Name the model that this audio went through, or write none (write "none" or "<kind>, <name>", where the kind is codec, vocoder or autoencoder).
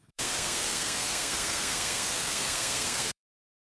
codec, SNAC